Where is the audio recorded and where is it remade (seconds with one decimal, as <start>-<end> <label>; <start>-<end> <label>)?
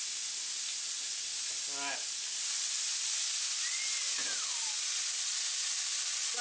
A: 0.0-6.4 recorded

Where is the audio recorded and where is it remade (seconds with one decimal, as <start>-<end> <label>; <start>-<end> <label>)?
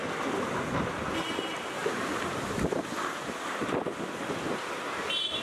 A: 0.0-1.8 recorded; 1.8-5.0 remade; 5.0-5.4 recorded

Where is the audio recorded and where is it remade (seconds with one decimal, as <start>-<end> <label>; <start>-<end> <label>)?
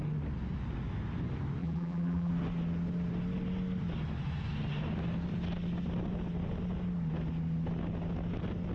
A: 0.0-1.6 recorded; 1.6-2.3 remade; 2.3-8.7 recorded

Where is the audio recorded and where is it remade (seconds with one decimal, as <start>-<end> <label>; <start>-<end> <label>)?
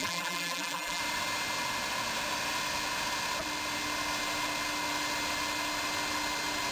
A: 0.0-1.0 remade; 1.0-6.7 recorded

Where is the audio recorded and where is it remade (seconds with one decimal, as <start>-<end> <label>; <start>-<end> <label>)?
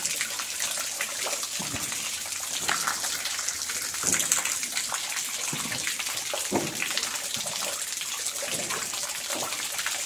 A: 0.0-1.6 recorded; 1.6-2.8 remade; 2.8-10.1 recorded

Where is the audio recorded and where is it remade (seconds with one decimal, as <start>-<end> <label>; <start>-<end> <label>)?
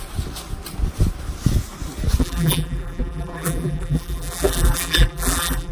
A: 0.0-2.2 recorded; 2.2-5.7 remade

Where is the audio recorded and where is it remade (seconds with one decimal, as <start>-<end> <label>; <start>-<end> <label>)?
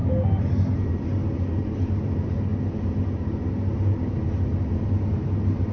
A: 0.0-5.7 recorded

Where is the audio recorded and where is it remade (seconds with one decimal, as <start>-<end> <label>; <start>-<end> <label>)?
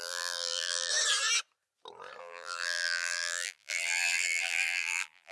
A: 0.0-0.9 remade; 0.9-2.2 recorded; 2.2-5.3 remade